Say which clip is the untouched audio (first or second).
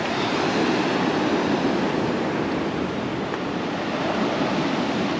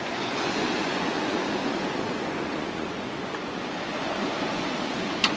first